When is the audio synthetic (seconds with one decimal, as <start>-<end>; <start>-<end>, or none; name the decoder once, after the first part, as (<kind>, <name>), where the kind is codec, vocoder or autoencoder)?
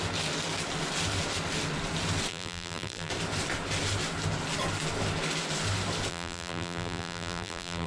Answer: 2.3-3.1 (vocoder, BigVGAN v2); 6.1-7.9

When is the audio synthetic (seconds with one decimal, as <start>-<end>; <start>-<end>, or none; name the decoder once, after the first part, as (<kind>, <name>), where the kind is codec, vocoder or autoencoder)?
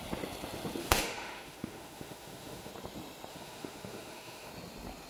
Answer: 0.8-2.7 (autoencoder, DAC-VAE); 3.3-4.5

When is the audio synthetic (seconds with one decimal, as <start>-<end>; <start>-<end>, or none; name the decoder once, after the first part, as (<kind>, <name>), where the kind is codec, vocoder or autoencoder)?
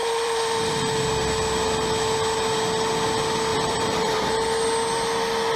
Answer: 0.0-0.8 (vocoder, BigVGAN v2); 3.5-4.3